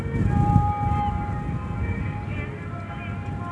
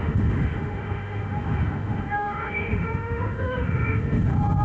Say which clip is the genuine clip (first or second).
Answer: first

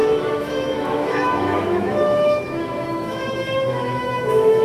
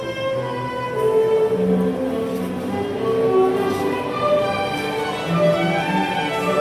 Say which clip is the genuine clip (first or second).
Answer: second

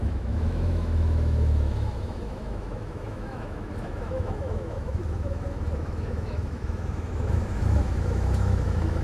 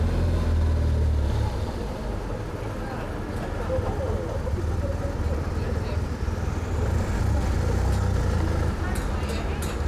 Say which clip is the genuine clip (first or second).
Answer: second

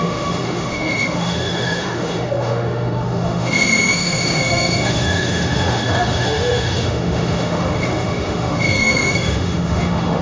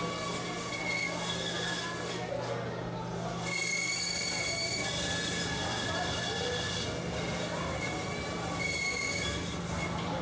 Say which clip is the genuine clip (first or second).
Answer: second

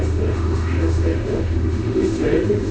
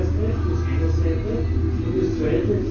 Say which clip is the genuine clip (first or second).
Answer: second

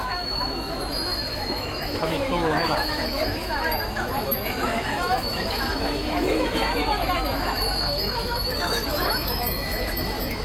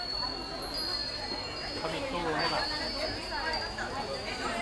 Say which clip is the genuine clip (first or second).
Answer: second